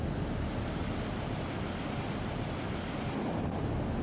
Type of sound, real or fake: real